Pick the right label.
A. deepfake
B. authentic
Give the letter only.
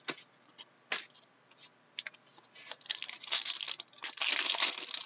B